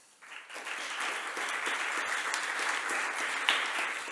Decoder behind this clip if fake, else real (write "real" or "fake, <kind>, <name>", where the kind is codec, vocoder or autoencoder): real